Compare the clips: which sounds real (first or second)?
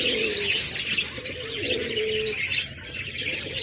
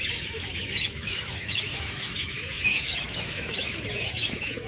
first